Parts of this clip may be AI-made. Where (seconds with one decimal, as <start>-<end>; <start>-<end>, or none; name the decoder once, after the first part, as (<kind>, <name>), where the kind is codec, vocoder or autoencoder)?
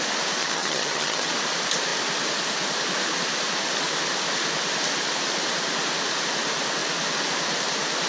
0.4-1.3 (vocoder, HiFi-GAN)